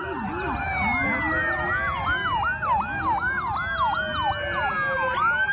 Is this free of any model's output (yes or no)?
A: yes